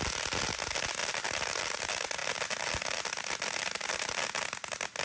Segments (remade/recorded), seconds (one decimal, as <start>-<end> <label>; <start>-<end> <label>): 0.0-1.0 recorded; 1.0-1.6 remade; 1.6-5.0 recorded